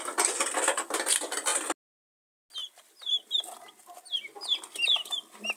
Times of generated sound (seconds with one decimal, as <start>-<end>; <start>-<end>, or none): none